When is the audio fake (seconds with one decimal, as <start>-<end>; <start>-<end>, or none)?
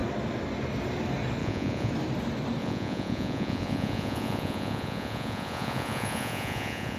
1.4-1.9; 2.6-7.0